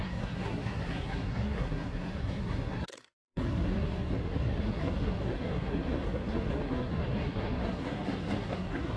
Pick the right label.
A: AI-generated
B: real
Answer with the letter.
A